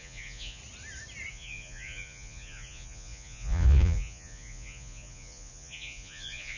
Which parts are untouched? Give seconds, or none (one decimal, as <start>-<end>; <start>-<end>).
0.6-1.3